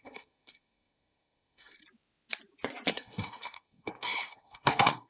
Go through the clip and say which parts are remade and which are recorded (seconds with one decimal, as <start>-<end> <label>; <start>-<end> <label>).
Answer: 0.0-1.8 remade; 1.8-2.9 recorded; 2.9-5.1 remade